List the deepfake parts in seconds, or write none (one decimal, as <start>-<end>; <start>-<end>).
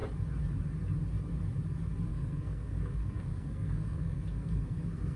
2.1-5.2